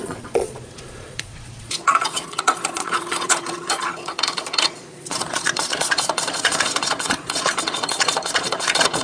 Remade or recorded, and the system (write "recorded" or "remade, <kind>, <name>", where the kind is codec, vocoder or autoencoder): remade, vocoder, Vocos